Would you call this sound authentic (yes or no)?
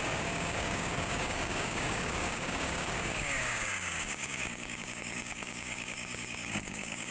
no